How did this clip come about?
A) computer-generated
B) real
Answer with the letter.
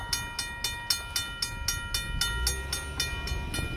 B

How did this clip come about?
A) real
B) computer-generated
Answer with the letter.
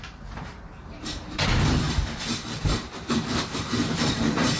B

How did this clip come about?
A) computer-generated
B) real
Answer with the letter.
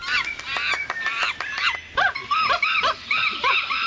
A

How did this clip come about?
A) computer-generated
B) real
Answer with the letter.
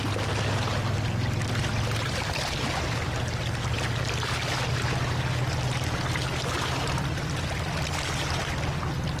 B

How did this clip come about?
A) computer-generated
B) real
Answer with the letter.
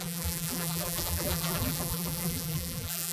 A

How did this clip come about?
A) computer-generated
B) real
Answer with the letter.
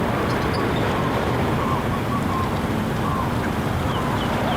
A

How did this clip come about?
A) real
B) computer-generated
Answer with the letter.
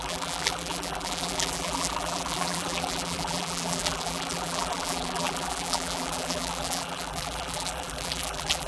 B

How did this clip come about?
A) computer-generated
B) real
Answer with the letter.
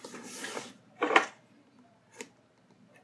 A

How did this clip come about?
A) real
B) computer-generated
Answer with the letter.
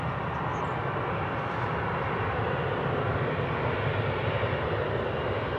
A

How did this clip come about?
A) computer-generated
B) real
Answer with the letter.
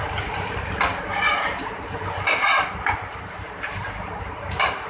A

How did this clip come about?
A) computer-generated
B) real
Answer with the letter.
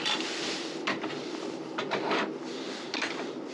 A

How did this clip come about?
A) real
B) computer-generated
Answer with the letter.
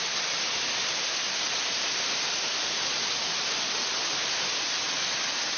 A